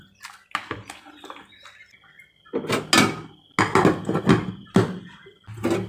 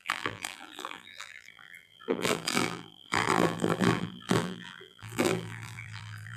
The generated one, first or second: second